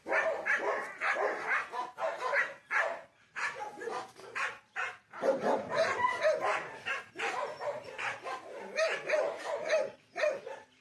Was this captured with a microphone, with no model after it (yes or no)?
yes